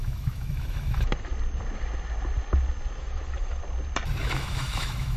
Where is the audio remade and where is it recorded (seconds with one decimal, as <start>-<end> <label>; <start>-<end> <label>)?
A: 0.0-1.3 remade; 1.3-3.0 recorded; 3.0-3.6 remade; 3.6-4.2 recorded; 4.2-5.2 remade